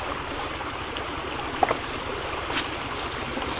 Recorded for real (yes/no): yes